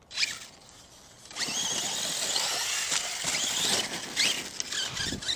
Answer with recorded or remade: recorded